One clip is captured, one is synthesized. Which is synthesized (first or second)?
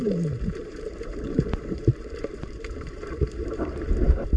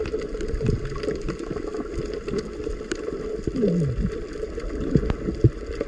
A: first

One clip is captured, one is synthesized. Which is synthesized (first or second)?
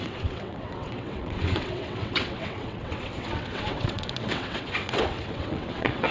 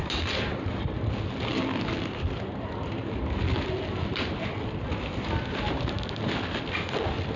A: first